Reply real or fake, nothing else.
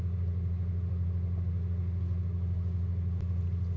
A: real